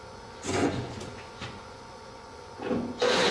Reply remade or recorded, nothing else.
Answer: remade